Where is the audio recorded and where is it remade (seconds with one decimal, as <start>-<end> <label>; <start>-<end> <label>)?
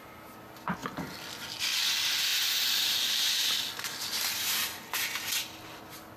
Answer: 0.0-6.2 recorded